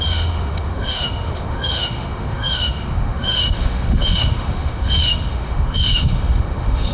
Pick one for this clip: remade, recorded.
remade